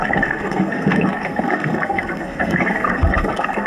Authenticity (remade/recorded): remade